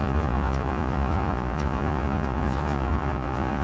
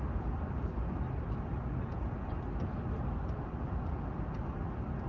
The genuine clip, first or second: second